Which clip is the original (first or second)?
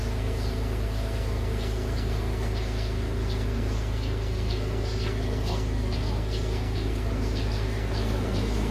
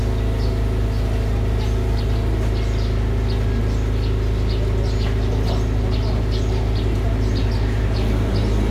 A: second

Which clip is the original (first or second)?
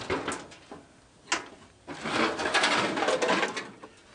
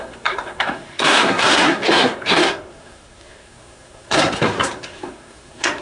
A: first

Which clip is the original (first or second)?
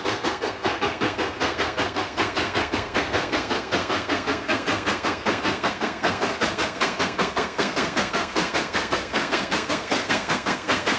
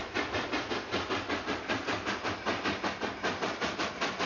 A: second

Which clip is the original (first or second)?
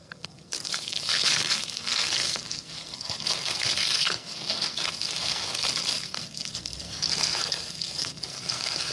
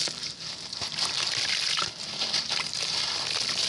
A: second